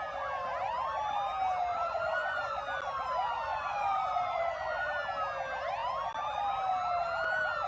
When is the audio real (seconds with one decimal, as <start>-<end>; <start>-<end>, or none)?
0.0-1.7; 2.6-3.5; 4.9-7.7